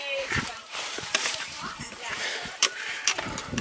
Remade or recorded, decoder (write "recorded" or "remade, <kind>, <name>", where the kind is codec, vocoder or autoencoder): remade, vocoder, BigVGAN v2